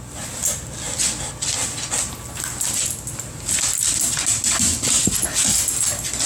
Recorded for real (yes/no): yes